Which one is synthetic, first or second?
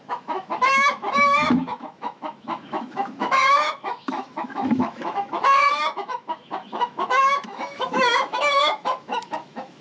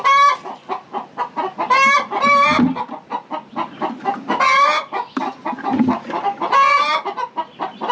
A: first